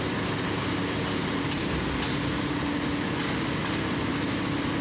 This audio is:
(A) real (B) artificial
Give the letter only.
A